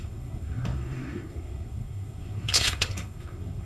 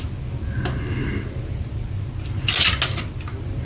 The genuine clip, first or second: second